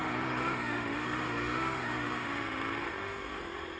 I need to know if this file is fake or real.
fake